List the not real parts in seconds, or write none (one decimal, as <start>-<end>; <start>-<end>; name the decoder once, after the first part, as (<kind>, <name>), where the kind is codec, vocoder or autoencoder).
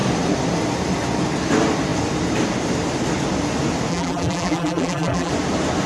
3.9-5.3 (vocoder, BigVGAN v2)